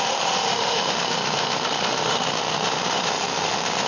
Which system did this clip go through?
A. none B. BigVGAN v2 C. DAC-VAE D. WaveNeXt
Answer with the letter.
C